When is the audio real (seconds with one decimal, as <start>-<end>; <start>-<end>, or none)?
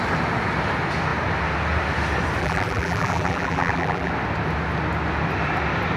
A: 0.0-2.4; 4.1-6.0